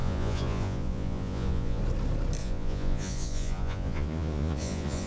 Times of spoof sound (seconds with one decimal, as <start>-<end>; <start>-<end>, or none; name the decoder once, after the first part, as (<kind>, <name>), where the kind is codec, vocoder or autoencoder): 0.0-1.8 (vocoder, Vocos); 2.4-5.1